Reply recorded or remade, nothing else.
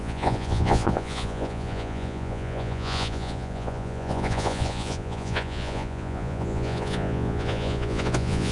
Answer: remade